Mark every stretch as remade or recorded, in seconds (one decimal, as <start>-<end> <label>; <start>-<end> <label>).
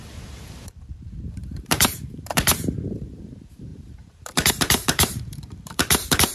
0.0-6.3 remade